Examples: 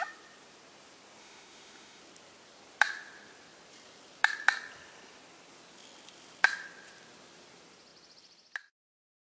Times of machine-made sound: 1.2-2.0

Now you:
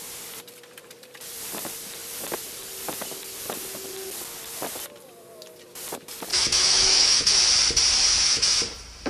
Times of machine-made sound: 6.3-7.4; 8.1-8.6

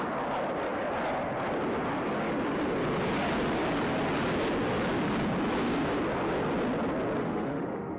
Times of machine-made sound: 7.2-8.0

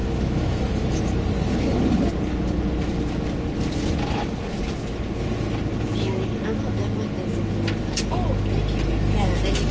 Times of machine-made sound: 0.0-1.0

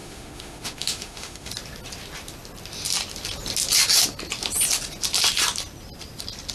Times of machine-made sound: 0.0-1.5